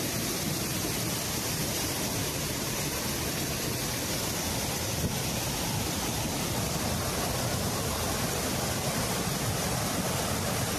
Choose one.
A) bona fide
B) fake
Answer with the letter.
A